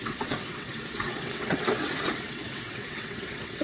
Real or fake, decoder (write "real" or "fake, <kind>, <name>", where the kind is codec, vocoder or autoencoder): fake, vocoder, WaveNeXt